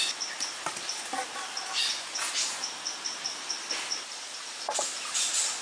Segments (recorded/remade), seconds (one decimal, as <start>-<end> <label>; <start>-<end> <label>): 0.0-1.9 recorded; 1.9-2.6 remade; 2.6-5.6 recorded